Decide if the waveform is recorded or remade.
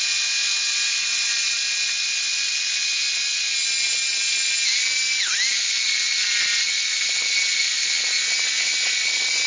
recorded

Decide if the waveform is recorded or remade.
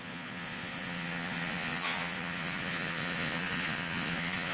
remade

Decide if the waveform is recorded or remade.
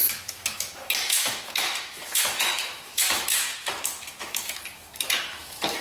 remade